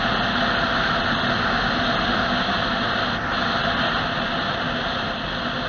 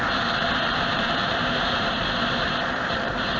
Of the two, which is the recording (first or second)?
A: first